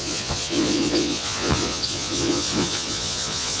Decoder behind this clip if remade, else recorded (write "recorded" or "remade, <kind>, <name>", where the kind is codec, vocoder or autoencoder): remade, vocoder, Vocos